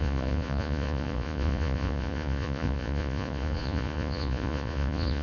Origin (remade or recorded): remade